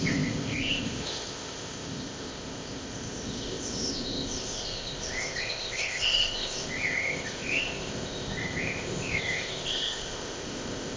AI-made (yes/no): yes